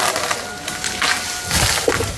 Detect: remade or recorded recorded